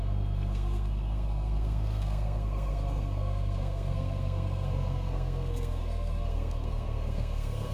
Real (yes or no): no